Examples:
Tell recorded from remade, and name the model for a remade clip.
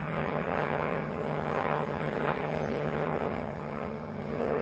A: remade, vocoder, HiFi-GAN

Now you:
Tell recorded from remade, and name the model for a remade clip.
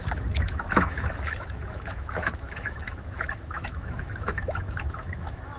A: remade, autoencoder, DAC-VAE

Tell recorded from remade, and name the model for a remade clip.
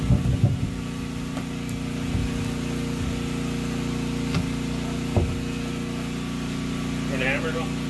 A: recorded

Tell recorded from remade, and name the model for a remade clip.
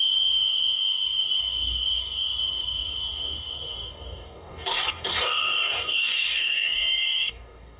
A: remade, codec, DAC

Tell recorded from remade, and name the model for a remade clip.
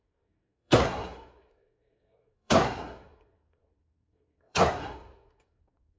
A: remade, codec, SNAC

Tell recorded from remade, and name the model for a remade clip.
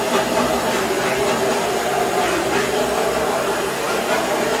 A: recorded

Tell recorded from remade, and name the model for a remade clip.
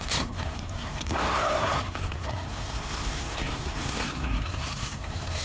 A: remade, codec, SNAC